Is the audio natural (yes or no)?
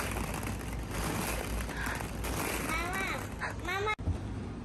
yes